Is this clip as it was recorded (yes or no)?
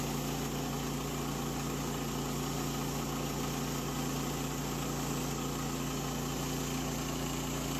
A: yes